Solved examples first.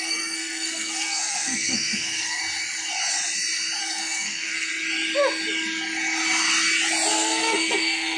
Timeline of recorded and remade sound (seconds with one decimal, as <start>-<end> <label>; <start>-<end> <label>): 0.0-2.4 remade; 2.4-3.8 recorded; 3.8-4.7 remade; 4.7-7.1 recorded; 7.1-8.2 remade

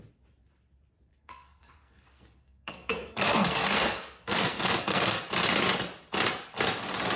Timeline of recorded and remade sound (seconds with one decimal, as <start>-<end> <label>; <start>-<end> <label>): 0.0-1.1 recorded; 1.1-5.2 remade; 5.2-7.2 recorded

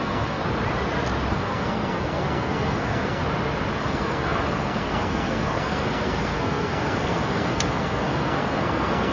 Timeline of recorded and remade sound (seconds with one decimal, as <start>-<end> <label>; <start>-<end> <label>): 0.0-0.4 remade; 0.4-1.3 recorded; 1.3-3.2 remade; 3.2-3.8 recorded; 3.8-9.1 remade

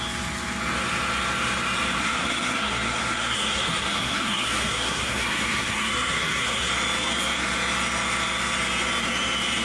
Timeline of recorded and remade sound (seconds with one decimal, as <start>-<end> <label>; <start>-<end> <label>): 0.0-2.0 recorded; 2.0-6.7 remade; 6.7-9.6 recorded

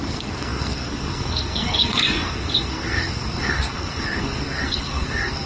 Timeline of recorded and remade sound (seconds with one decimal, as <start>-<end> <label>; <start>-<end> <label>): 0.0-5.5 remade